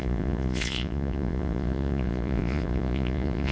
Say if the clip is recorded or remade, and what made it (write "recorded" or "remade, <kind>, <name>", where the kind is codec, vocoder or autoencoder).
remade, vocoder, Vocos